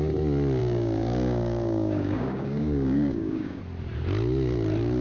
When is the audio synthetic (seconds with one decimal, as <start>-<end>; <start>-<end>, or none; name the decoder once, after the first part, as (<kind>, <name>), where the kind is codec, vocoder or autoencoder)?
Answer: 0.6-3.6 (codec, DAC)